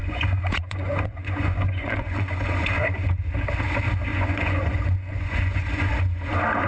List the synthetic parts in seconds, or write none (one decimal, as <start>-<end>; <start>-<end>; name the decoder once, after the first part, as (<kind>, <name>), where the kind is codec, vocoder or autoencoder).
0.0-2.6 (vocoder, Vocos); 4.1-5.9